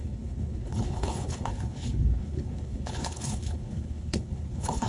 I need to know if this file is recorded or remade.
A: remade